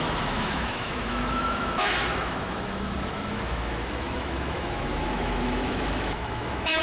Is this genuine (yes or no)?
no